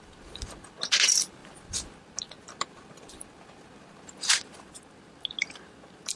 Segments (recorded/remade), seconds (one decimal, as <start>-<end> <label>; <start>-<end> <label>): 0.0-6.2 recorded